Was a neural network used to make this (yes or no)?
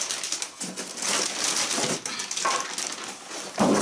no